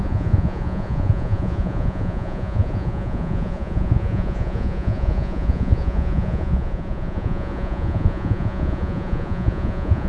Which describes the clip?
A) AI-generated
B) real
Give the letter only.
A